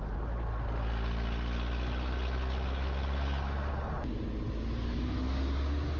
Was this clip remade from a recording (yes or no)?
no